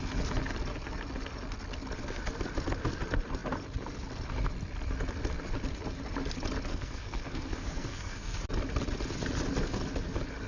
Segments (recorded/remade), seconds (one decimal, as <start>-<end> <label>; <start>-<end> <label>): 0.0-6.7 recorded; 6.7-8.4 remade; 8.4-10.5 recorded